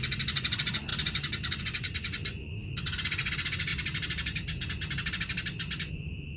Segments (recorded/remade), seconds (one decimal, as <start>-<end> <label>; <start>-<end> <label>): 0.0-3.7 remade; 3.7-5.9 recorded; 5.9-6.4 remade